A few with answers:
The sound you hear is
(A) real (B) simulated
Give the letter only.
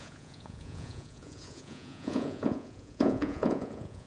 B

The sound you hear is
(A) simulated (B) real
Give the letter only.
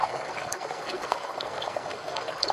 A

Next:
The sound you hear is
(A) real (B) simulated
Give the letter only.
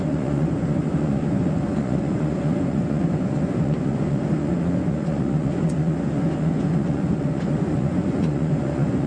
B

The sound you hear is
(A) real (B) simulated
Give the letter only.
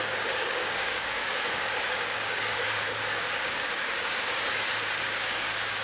B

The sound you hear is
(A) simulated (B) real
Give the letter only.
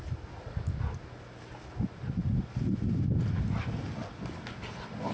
B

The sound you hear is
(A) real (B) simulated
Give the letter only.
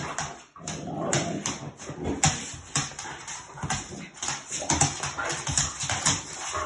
A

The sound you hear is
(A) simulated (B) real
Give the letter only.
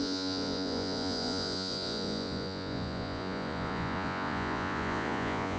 A